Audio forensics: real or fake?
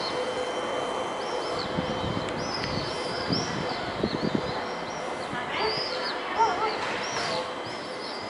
real